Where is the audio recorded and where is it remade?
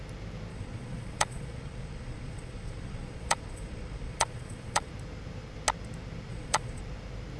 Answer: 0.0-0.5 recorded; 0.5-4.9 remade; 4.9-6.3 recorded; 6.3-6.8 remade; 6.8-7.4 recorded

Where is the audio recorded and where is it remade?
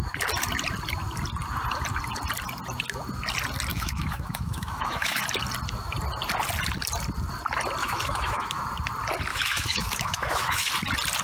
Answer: 0.0-3.7 recorded; 3.7-5.2 remade; 5.2-7.8 recorded; 7.8-8.6 remade; 8.6-9.3 recorded; 9.3-10.7 remade; 10.7-11.2 recorded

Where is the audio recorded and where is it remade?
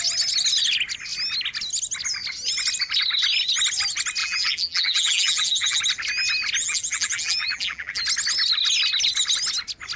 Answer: 0.0-4.2 recorded; 4.2-5.8 remade; 5.8-6.6 recorded; 6.6-8.0 remade; 8.0-10.0 recorded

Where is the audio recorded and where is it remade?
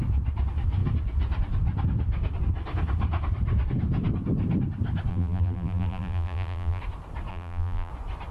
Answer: 0.0-5.1 recorded; 5.1-6.8 remade; 6.8-7.3 recorded; 7.3-7.9 remade; 7.9-8.3 recorded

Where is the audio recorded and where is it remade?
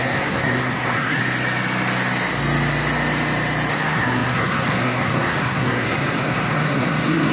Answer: 0.0-1.2 remade; 1.2-3.7 recorded; 3.7-7.3 remade